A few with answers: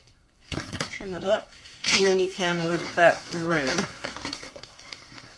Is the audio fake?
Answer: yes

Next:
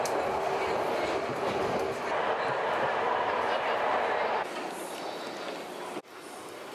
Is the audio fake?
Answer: no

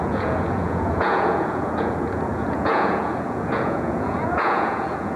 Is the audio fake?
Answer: yes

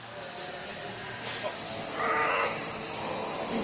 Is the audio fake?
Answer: no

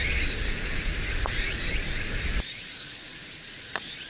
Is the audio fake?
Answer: yes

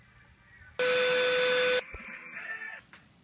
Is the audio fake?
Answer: no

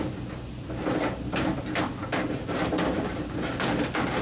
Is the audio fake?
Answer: no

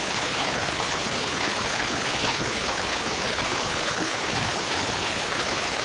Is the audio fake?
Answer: yes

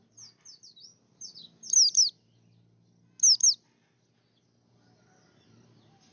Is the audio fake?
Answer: no